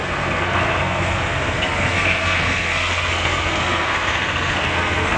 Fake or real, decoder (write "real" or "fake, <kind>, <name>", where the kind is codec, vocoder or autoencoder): fake, codec, SNAC